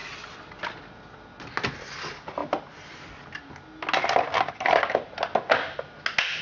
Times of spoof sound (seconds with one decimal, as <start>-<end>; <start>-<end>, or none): none